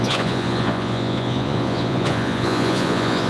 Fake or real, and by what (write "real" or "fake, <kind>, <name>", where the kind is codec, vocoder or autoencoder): fake, vocoder, Vocos